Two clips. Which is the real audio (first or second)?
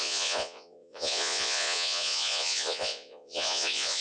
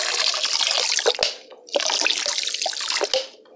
second